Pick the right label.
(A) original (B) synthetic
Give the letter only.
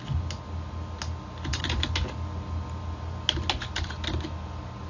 A